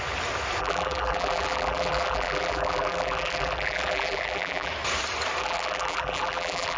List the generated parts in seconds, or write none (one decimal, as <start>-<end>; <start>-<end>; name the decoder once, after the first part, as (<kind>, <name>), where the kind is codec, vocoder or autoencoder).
0.6-4.7 (vocoder, BigVGAN v2); 5.4-6.8